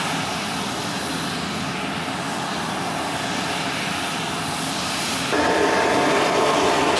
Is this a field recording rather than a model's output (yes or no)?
yes